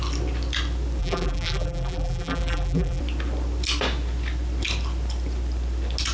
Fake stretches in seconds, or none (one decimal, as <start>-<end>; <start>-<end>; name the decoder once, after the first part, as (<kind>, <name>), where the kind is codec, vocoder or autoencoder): 1.0-3.0 (vocoder, BigVGAN v2)